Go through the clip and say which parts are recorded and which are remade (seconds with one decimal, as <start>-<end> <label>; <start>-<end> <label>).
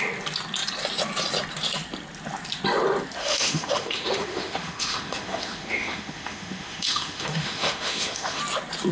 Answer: 0.0-3.2 recorded; 3.2-8.4 remade; 8.4-8.9 recorded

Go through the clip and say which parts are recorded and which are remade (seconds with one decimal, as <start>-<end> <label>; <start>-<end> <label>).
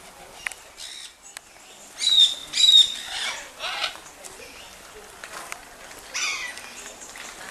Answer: 0.0-7.5 recorded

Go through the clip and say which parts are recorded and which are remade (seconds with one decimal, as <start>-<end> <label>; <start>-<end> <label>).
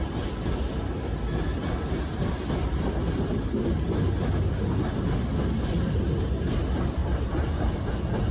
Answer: 0.0-7.0 recorded; 7.0-7.9 remade; 7.9-8.3 recorded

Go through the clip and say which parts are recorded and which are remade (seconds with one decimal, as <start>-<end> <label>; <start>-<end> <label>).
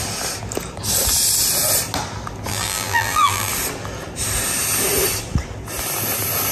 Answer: 0.0-2.5 recorded; 2.5-3.5 remade; 3.5-6.5 recorded